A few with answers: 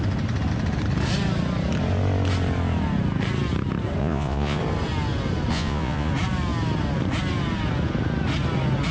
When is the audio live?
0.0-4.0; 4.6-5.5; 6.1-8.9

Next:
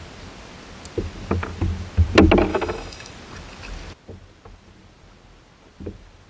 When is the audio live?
0.0-2.5; 3.1-6.3

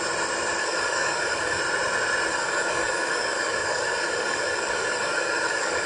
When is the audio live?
0.0-0.6; 1.6-2.3